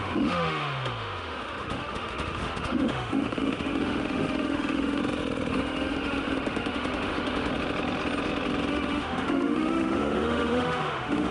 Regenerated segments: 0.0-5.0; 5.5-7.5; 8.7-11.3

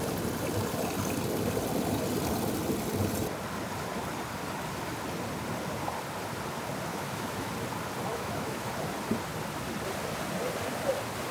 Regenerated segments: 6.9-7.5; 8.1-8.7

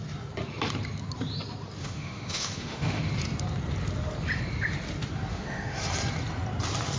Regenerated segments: 1.8-3.1; 5.3-5.8

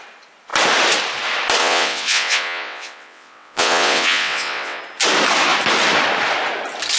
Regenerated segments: 1.6-4.8

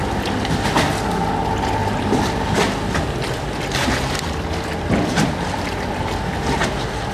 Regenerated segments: 1.8-6.1

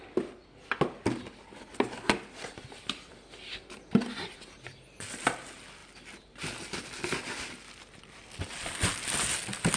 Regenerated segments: none